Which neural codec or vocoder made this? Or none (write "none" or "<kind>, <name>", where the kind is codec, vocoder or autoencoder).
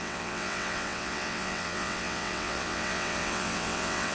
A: vocoder, WaveNeXt